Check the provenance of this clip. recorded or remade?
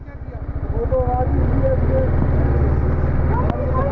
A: recorded